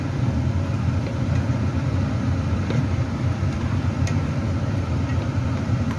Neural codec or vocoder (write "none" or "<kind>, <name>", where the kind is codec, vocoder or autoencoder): vocoder, BigVGAN v2